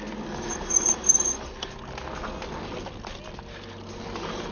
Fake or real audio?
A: real